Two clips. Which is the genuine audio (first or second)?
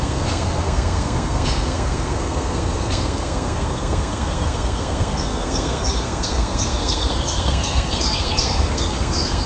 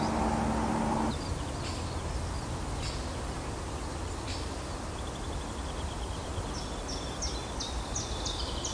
second